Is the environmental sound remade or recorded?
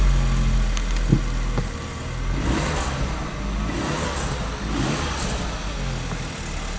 recorded